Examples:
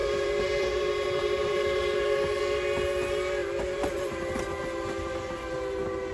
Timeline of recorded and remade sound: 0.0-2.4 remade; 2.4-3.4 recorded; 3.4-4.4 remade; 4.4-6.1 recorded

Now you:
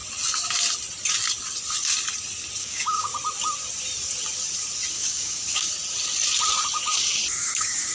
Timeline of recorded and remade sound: 0.0-2.6 recorded; 2.6-3.1 remade; 3.1-4.9 recorded; 4.9-5.7 remade; 5.7-7.3 recorded; 7.3-7.9 remade

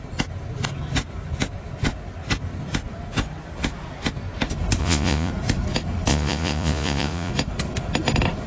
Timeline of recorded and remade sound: 0.0-4.8 recorded; 4.8-5.3 remade; 5.3-6.1 recorded; 6.1-7.3 remade; 7.3-8.5 recorded

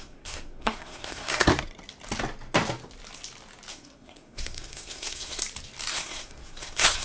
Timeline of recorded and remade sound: 0.0-1.5 remade; 1.5-3.7 recorded; 3.7-5.4 remade; 5.4-5.9 recorded; 5.9-7.0 remade